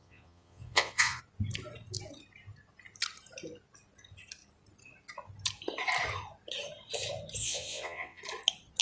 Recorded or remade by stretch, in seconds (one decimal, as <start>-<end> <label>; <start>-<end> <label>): 0.0-1.2 remade; 1.2-7.4 recorded; 7.4-8.2 remade; 8.2-8.8 recorded